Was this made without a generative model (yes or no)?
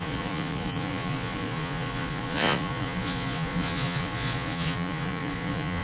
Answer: no